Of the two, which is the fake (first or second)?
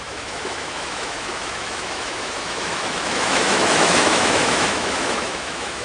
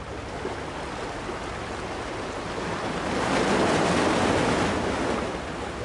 first